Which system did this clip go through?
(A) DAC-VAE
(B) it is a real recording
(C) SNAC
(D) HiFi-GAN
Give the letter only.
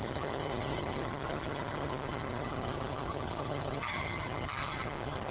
D